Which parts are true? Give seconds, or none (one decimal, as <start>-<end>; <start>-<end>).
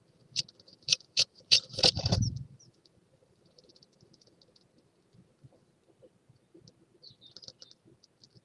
0.0-0.7; 3.7-8.4